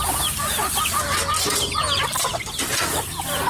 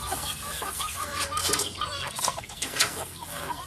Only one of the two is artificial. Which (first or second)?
second